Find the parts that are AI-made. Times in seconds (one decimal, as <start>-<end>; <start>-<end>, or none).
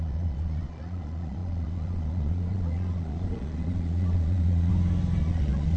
0.0-4.7; 5.2-5.8